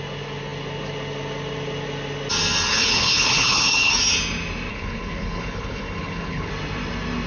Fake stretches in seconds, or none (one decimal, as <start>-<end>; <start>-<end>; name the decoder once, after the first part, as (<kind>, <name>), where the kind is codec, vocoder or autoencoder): 2.7-3.9 (codec, HILCodec); 4.7-6.5